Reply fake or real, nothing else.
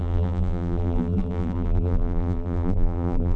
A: fake